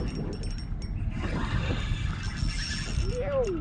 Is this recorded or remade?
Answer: recorded